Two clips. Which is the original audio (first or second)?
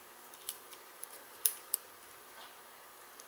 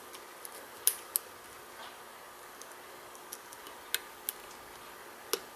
second